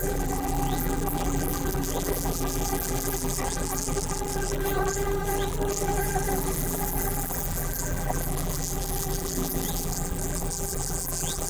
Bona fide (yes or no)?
no